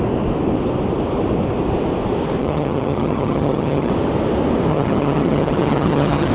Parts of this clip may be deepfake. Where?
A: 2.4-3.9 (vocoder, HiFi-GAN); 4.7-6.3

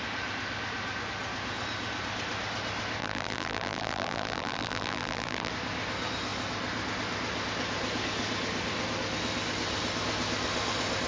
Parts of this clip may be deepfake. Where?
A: 3.0-5.5 (vocoder, BigVGAN v2)

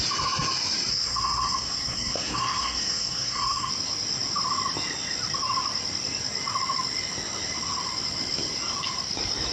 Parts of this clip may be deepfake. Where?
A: 0.9-3.7 (codec, SNAC)

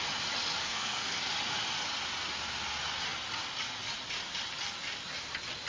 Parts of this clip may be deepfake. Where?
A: 0.6-1.2 (codec, SNAC)

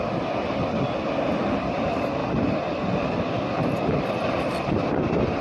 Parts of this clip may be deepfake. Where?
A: 2.2-5.4 (vocoder, BigVGAN v2)

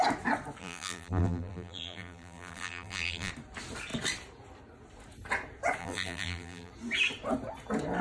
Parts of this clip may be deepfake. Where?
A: 0.6-3.3 (vocoder, BigVGAN v2); 5.8-6.7